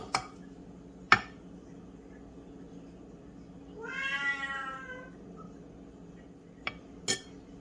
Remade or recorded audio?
recorded